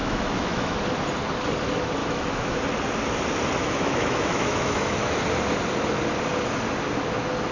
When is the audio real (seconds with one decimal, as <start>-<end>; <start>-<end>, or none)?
0.8-2.0; 2.6-3.6; 5.2-7.5